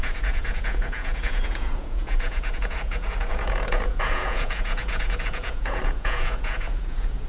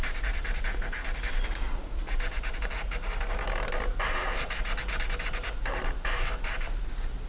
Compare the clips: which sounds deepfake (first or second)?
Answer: first